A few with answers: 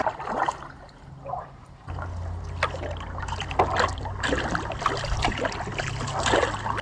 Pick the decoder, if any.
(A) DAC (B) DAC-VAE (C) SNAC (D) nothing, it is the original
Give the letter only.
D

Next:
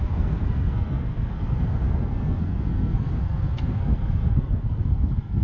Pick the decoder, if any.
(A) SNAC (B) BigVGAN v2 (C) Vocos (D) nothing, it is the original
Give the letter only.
A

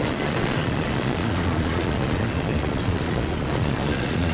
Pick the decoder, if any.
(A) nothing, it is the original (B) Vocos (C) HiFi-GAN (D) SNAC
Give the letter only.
B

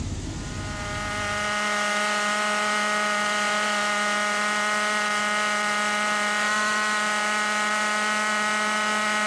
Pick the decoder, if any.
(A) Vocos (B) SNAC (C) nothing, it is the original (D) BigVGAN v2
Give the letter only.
C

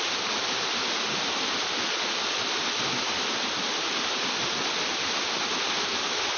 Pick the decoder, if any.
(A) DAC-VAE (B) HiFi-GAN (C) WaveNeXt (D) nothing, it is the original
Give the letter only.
D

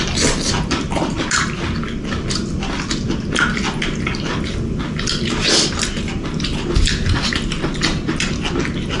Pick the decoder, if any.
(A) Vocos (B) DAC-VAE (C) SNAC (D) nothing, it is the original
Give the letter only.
D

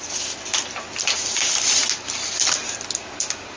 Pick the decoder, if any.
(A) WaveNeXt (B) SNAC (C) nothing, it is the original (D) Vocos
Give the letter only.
C